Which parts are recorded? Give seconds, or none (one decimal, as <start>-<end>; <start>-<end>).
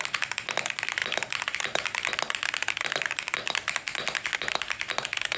0.0-5.4